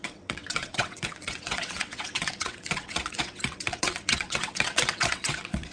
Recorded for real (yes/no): no